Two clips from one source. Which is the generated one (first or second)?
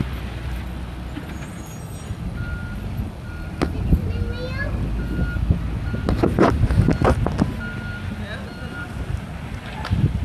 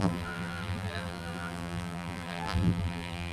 second